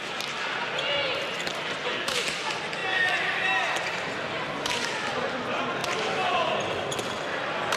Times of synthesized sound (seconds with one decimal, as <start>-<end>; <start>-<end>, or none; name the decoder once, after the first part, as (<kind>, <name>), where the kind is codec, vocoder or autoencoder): 1.5-2.2 (vocoder, BigVGAN v2)